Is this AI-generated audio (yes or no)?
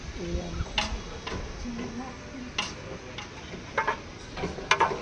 no